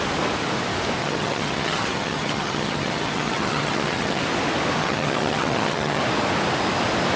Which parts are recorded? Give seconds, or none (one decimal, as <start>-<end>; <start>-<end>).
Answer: 0.0-1.0; 4.2-4.8; 6.0-7.2